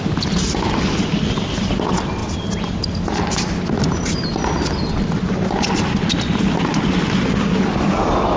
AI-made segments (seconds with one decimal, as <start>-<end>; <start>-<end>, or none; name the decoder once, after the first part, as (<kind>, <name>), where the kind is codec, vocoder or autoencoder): none